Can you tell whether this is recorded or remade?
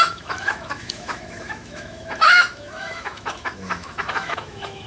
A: remade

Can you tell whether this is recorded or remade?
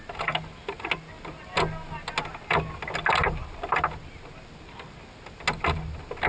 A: recorded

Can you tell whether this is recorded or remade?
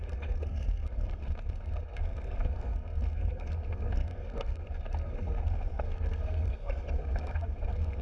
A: remade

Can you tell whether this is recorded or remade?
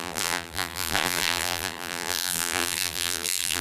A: remade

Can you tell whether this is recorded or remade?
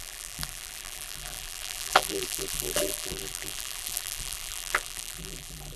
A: remade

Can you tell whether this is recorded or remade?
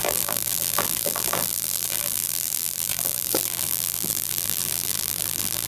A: remade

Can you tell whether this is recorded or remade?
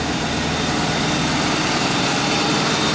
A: recorded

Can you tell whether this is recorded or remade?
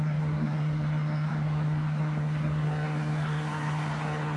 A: remade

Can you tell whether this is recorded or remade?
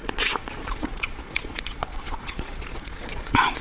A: remade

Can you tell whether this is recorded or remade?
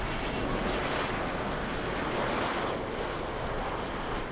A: recorded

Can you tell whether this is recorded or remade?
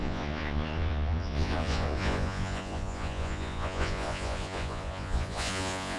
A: remade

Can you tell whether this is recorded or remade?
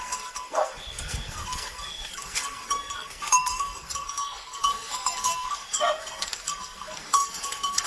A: remade